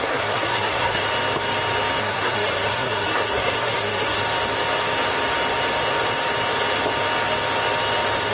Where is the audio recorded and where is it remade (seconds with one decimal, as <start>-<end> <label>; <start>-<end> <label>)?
0.0-1.0 remade; 1.0-2.0 recorded; 2.0-4.2 remade; 4.2-8.3 recorded